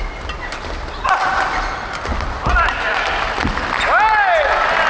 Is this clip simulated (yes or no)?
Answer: no